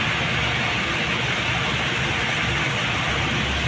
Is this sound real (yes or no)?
yes